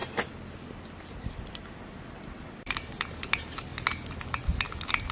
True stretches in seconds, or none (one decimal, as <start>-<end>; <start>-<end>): 0.0-5.1